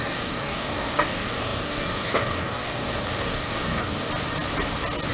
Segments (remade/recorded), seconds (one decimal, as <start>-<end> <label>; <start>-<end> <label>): 0.0-4.1 remade; 4.1-5.1 recorded